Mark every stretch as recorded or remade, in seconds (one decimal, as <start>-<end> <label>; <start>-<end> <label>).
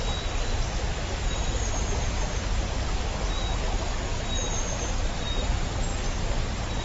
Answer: 0.0-6.8 recorded